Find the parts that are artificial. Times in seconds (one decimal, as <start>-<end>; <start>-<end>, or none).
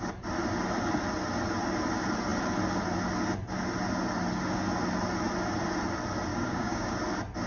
6.3-6.9